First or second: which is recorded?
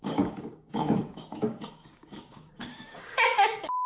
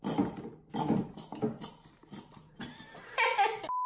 second